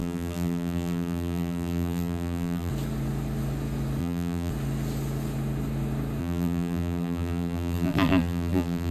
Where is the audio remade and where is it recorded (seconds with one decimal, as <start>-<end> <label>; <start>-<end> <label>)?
0.0-2.7 remade; 2.7-4.0 recorded; 4.0-4.5 remade; 4.5-6.2 recorded; 6.2-8.9 remade